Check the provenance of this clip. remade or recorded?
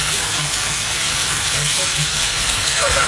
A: remade